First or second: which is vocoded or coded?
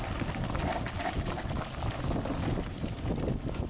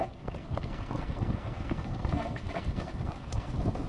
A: second